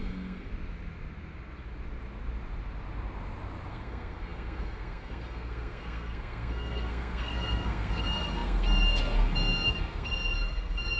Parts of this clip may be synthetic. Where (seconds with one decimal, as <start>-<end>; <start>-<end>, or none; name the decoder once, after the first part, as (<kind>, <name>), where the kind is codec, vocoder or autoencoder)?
0.0-0.5 (codec, SNAC); 3.7-11.0